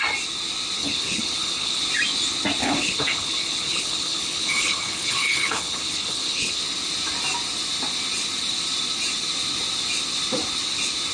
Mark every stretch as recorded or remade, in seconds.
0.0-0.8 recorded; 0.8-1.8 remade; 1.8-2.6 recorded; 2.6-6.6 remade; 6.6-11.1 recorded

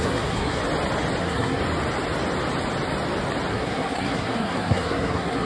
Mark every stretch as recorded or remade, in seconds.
0.0-0.6 remade; 0.6-1.2 recorded; 1.2-1.6 remade; 1.6-3.5 recorded; 3.5-5.5 remade

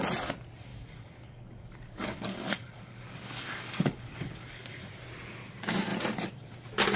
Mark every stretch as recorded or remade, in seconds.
0.0-0.7 recorded; 0.7-4.9 remade; 4.9-7.0 recorded

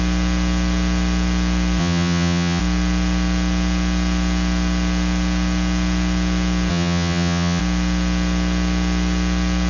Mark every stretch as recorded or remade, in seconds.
0.0-1.8 recorded; 1.8-2.6 remade; 2.6-6.7 recorded; 6.7-7.6 remade; 7.6-9.7 recorded

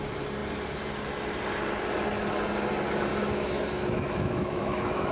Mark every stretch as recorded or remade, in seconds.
0.0-3.1 recorded; 3.1-5.1 remade